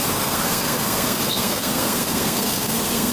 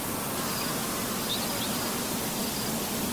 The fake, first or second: first